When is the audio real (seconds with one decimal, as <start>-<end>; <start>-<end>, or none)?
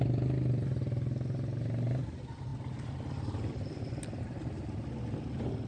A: 0.0-5.7